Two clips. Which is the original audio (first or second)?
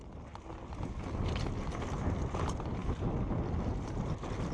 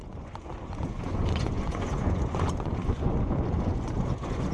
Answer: first